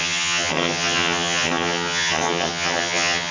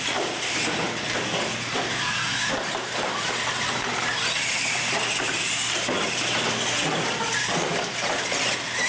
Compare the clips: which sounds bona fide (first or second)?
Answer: second